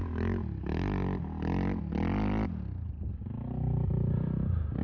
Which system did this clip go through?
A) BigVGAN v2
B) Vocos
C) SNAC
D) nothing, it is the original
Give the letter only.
D